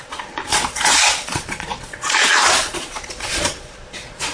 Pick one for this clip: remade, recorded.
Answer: remade